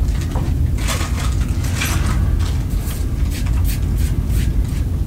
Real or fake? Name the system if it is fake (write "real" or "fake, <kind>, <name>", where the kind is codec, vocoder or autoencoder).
real